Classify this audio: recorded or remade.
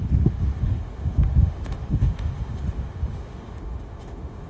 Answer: remade